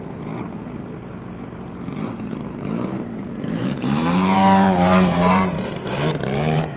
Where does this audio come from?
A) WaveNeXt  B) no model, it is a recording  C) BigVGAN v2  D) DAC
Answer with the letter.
C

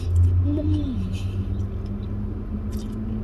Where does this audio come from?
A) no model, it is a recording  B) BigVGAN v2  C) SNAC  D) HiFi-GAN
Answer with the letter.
A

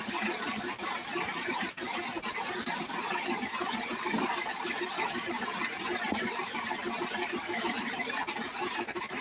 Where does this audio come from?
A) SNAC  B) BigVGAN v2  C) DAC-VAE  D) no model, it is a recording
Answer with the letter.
B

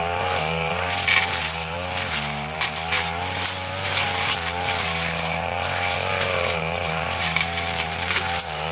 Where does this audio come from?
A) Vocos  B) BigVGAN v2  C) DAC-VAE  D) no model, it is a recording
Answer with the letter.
B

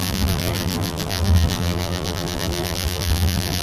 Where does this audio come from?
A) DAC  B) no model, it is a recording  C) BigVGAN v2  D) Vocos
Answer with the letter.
C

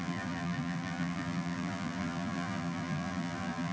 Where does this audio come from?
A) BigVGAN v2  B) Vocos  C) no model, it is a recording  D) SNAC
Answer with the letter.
A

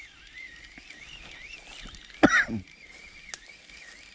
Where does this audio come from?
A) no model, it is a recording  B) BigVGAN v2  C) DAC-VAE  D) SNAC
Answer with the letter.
A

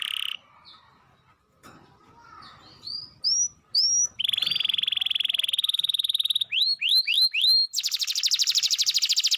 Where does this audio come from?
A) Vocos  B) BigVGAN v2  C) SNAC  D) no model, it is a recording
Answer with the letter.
D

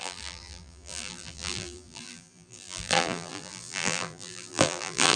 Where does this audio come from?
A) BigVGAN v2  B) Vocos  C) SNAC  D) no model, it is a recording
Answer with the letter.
A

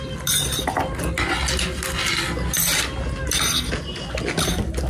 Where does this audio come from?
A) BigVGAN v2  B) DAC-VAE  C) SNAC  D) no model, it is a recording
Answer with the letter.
D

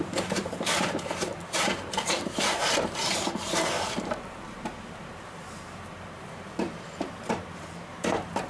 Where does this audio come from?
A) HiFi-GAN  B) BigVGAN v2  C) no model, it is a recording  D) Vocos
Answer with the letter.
B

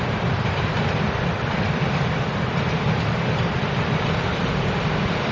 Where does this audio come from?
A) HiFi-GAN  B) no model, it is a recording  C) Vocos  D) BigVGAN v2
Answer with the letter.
D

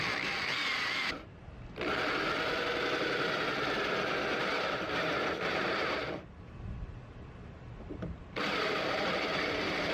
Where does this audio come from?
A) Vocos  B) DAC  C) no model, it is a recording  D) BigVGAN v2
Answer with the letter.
D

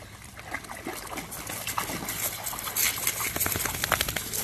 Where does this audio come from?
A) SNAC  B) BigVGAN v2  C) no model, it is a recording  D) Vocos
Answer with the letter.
C